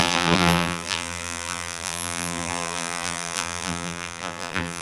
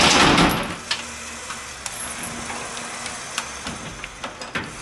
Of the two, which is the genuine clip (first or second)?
second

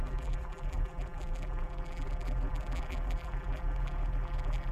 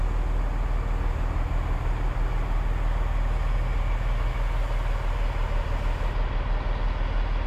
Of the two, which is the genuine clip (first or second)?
second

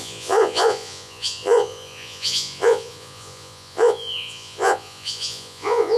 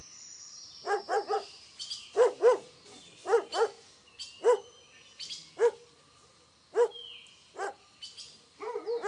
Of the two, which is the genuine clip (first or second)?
second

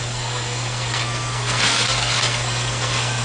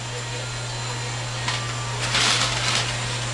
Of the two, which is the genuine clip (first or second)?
second